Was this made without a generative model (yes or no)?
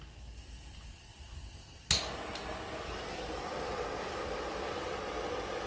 yes